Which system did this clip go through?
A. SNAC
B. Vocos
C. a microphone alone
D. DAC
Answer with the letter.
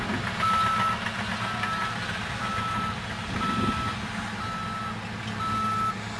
C